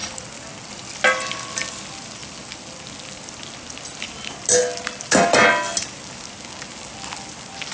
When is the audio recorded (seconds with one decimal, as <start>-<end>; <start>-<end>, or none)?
0.0-7.7